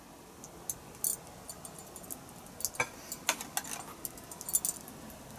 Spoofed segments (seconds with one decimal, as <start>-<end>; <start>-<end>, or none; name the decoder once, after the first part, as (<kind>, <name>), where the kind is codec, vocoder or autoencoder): none